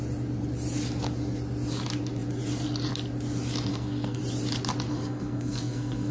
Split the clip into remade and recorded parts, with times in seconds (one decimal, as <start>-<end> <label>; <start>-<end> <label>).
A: 0.0-3.7 recorded; 3.7-4.2 remade; 4.2-4.9 recorded; 4.9-6.1 remade